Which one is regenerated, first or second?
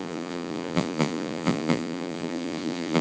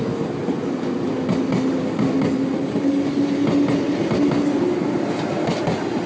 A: first